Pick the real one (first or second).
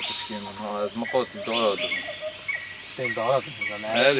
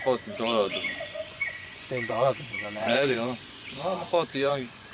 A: first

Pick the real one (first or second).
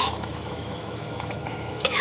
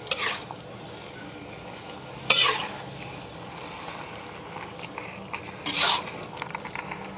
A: second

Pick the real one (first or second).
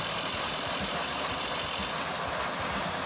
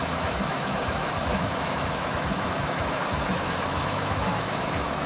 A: first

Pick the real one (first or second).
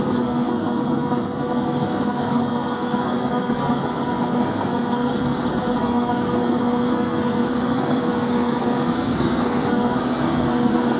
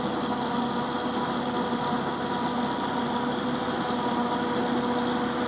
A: second